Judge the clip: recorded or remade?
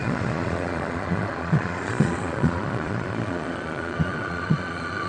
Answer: remade